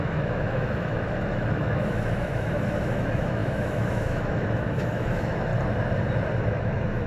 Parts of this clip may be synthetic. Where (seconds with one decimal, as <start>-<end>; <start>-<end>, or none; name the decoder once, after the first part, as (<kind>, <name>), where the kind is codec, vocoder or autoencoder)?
0.0-5.5 (autoencoder, DAC-VAE); 6.4-7.1